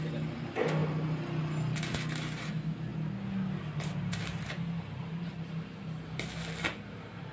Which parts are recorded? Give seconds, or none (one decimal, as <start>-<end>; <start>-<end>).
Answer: 0.0-7.3